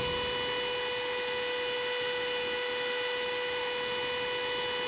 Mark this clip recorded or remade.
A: recorded